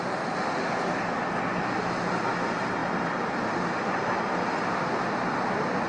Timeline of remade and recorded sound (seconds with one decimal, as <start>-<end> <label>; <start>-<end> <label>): 0.0-5.9 recorded